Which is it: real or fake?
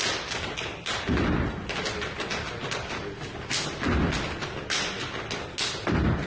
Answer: real